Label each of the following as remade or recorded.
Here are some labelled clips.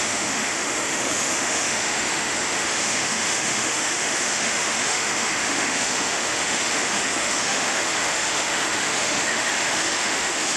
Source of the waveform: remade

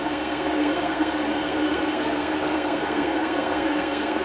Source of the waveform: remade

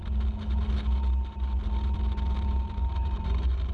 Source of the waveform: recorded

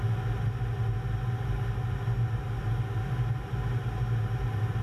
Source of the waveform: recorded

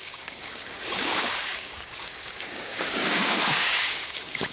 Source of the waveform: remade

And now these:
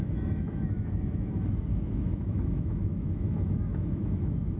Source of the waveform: remade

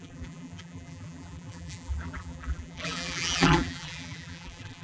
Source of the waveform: remade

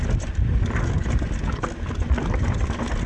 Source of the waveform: recorded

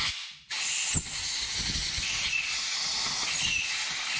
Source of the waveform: recorded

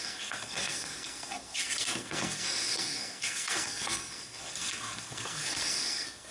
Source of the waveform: remade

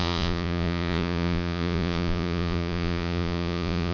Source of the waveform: remade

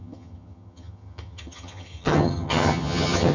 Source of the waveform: remade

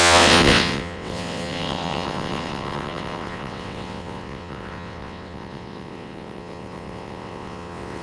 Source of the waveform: remade